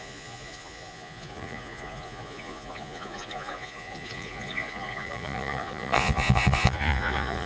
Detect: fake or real fake